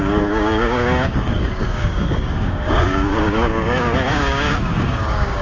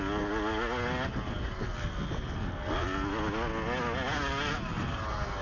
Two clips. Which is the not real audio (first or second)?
first